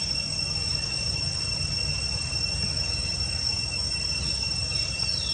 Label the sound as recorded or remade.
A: recorded